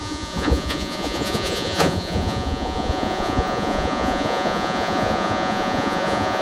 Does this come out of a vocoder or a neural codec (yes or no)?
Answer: yes